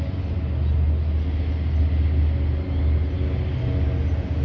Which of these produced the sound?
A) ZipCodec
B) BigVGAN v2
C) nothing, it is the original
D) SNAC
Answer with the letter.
C